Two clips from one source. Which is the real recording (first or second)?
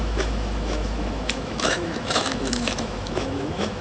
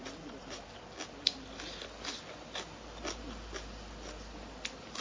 second